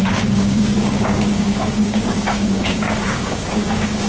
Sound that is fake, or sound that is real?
fake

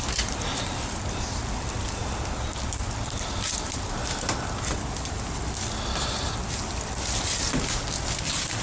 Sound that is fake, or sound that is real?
real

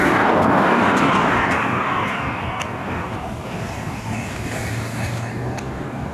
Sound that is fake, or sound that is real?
fake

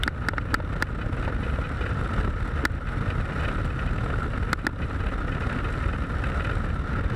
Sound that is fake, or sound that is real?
real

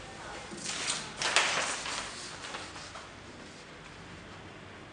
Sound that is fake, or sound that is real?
real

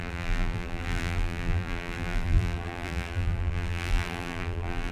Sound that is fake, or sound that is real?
fake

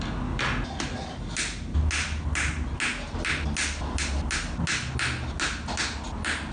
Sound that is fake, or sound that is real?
real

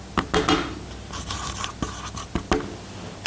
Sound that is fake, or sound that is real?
real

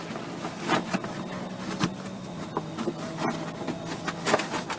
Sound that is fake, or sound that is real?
real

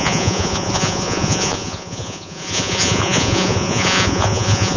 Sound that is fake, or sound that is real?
fake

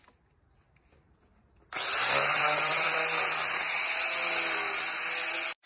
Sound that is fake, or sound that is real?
real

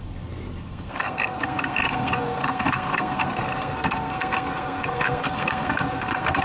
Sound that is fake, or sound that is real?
fake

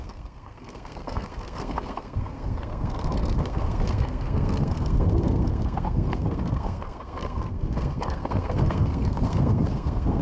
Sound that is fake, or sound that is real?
fake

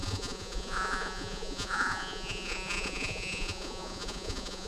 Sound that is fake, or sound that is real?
fake